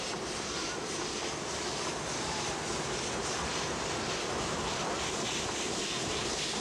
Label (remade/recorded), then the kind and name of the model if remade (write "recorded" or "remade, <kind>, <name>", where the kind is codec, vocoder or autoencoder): recorded